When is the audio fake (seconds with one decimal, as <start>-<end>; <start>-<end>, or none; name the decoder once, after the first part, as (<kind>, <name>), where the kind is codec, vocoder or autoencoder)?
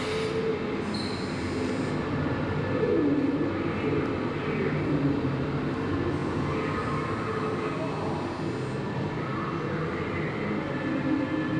none